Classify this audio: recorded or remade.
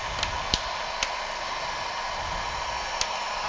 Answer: recorded